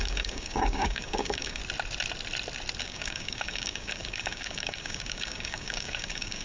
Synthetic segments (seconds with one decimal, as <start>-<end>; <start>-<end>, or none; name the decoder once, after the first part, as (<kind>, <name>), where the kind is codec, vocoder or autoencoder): 0.0-1.6 (codec, DAC); 2.8-6.4